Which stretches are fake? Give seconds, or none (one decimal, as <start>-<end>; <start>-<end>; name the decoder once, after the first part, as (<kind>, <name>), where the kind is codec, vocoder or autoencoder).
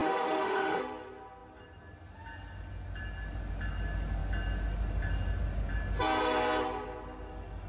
0.0-0.8 (autoencoder, DAC-VAE)